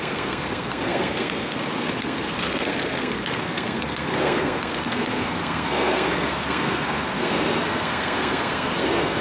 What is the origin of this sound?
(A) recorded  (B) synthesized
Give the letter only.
B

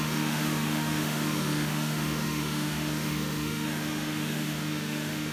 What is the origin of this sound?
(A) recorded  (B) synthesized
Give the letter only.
B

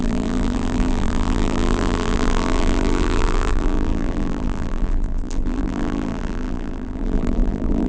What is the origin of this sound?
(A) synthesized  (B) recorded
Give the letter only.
A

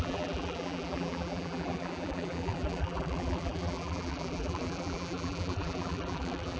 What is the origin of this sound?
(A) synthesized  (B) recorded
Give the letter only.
A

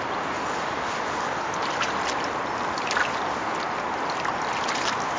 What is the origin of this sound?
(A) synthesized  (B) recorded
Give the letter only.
B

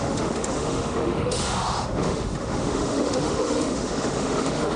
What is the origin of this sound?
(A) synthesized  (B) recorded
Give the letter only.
A